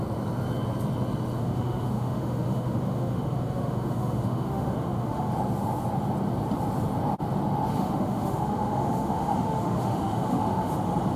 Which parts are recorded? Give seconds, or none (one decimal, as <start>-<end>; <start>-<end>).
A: 0.0-1.4; 5.3-7.7; 10.7-11.2